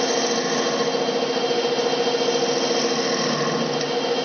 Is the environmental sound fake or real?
real